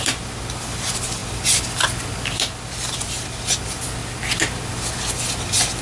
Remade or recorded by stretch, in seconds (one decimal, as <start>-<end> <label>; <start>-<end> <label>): 0.0-5.8 recorded